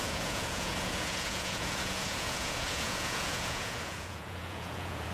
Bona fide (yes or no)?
no